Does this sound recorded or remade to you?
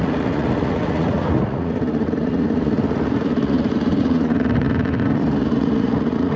remade